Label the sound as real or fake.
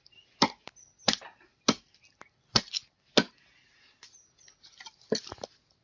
real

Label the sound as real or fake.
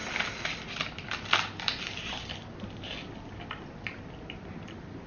real